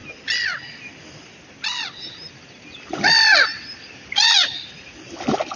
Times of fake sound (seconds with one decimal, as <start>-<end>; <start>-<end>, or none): none